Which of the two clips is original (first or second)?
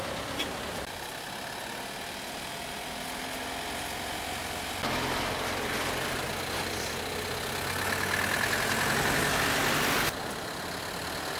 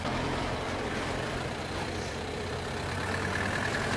first